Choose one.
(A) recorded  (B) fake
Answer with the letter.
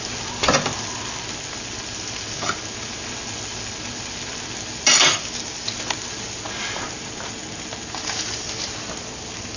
A